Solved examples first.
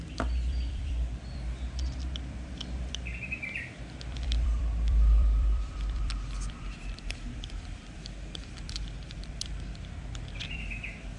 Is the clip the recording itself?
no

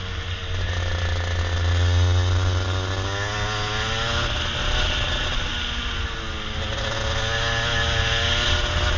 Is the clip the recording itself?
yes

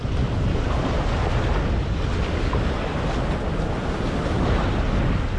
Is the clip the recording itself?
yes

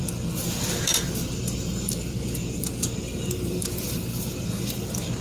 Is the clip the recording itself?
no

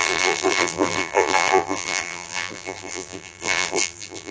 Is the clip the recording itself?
no